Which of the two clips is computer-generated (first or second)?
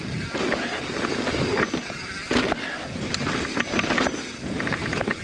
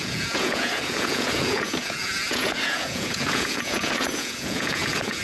second